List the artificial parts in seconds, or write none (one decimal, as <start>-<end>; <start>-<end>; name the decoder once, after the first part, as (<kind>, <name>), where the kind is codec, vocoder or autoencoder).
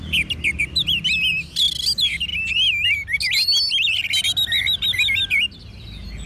none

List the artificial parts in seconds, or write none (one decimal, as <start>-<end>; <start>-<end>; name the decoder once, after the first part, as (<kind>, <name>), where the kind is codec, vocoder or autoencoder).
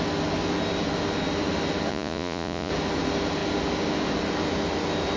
1.9-2.7 (vocoder, Vocos)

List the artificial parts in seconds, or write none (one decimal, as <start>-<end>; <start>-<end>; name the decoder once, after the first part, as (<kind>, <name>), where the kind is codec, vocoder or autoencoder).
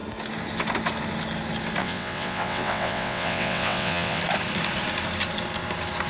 1.8-4.2 (vocoder, WaveNeXt)